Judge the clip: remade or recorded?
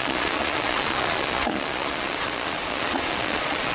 remade